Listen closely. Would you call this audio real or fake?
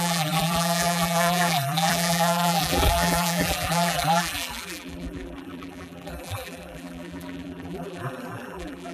fake